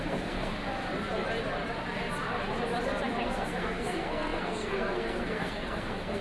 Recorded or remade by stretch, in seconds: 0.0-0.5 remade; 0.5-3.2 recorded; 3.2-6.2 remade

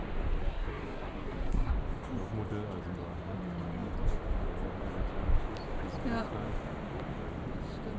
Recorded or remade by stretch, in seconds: 0.0-0.4 recorded; 0.4-1.7 remade; 1.7-8.0 recorded

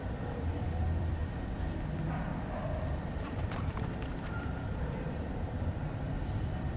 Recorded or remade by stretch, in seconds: 0.0-1.2 remade; 1.2-1.9 recorded; 1.9-2.3 remade; 2.3-3.0 recorded; 3.0-6.8 remade

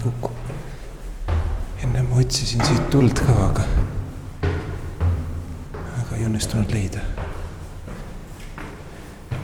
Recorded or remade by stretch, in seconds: 0.0-2.4 remade; 2.4-3.0 recorded; 3.0-3.7 remade; 3.7-4.6 recorded; 4.6-5.5 remade; 5.5-6.2 recorded; 6.2-8.2 remade; 8.2-8.7 recorded; 8.7-9.4 remade

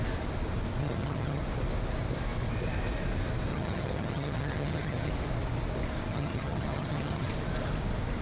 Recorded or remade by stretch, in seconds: 0.0-0.8 recorded; 0.8-1.4 remade; 1.4-3.5 recorded; 3.5-5.1 remade; 5.1-6.1 recorded; 6.1-7.3 remade; 7.3-8.2 recorded

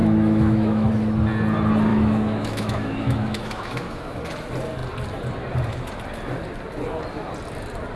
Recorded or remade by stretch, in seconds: 0.0-0.9 remade; 0.9-1.9 recorded; 1.9-4.2 remade; 4.2-8.0 recorded

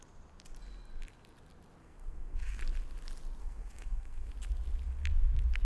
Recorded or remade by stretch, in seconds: 0.0-1.8 recorded; 1.8-2.6 remade; 2.6-3.4 recorded; 3.4-4.3 remade; 4.3-5.6 recorded

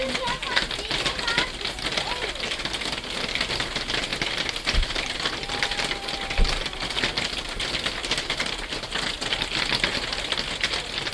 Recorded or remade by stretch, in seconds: 0.0-4.1 recorded; 4.1-8.3 remade; 8.3-11.1 recorded